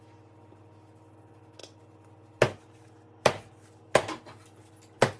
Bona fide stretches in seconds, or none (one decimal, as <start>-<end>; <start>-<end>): 0.0-5.2